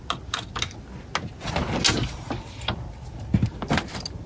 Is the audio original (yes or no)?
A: yes